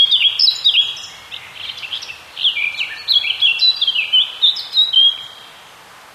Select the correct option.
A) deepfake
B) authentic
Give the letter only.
B